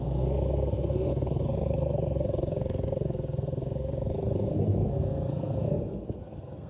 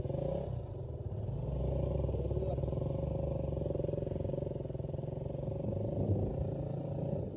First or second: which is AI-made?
first